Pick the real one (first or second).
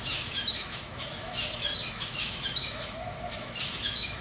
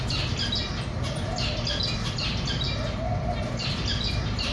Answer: second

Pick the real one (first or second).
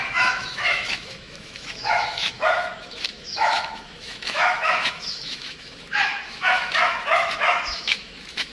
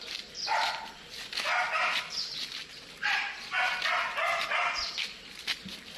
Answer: second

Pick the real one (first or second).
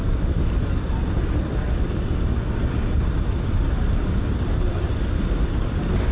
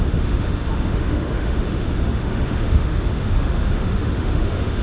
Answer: first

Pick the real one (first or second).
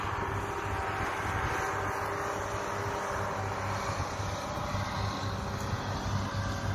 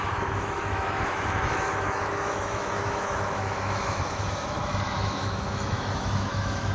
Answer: first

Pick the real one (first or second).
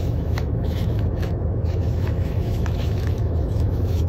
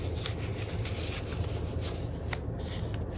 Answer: second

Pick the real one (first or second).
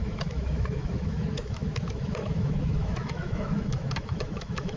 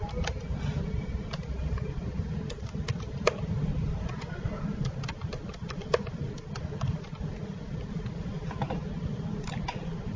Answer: second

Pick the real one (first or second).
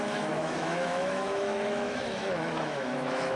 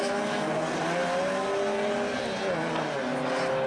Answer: second